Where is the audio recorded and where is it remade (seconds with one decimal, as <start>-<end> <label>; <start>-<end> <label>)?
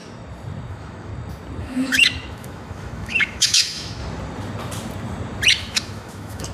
0.0-0.7 recorded; 0.7-1.1 remade; 1.1-1.6 recorded; 1.6-4.0 remade; 4.0-5.5 recorded; 5.5-6.5 remade